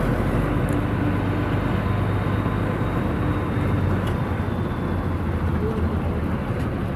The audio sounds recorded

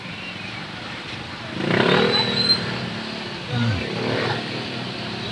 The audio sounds remade